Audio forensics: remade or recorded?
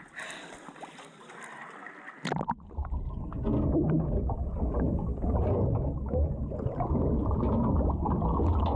recorded